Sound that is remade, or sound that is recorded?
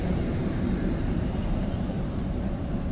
remade